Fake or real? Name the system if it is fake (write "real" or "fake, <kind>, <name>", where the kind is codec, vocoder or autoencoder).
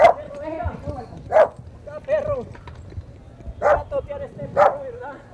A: real